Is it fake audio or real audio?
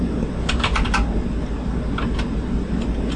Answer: real